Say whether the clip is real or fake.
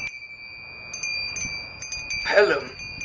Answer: real